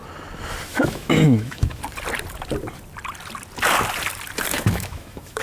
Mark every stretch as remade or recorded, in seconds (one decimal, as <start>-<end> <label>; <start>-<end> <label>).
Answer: 0.0-0.7 recorded; 0.7-1.8 remade; 1.8-4.5 recorded; 4.5-5.4 remade